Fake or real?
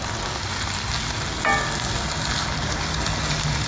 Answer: real